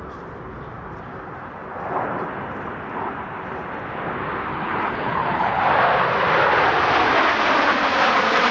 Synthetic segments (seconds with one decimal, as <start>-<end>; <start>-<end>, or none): 4.5-5.6